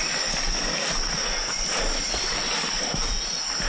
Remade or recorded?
recorded